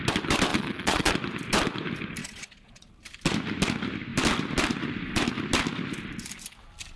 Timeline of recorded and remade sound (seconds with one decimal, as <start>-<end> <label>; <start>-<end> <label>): 0.0-0.5 recorded; 0.5-1.1 remade; 1.1-2.2 recorded; 2.2-2.9 remade; 2.9-7.0 recorded